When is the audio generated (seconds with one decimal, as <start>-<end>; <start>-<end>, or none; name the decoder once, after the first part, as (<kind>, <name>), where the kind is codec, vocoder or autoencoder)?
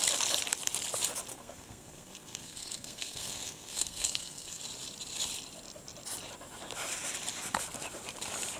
1.3-4.6 (codec, SNAC)